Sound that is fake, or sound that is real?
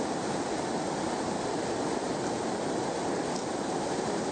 real